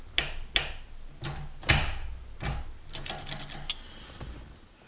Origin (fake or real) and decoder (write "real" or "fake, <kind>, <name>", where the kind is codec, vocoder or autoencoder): real